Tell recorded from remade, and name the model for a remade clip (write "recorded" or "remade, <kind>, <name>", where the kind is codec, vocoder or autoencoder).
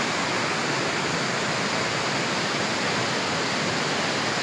recorded